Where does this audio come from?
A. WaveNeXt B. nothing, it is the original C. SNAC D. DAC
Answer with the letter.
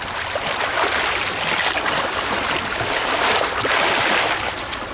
B